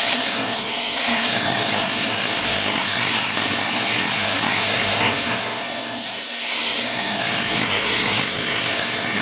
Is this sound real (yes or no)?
no